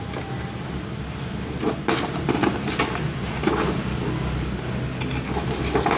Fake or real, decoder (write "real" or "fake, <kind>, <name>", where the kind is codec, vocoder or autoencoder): real